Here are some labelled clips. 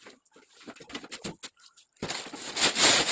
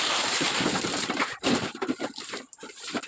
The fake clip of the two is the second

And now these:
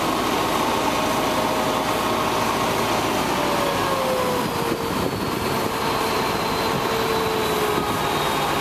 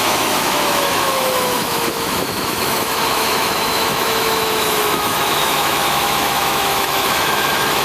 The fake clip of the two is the second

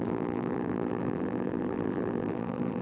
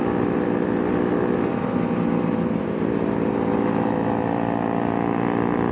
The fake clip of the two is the first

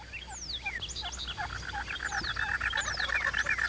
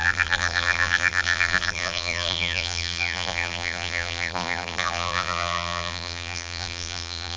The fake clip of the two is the second